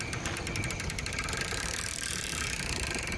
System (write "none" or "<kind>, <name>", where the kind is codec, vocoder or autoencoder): none